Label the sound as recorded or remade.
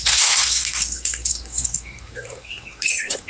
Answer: remade